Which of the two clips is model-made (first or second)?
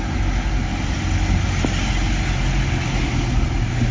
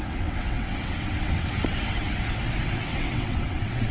second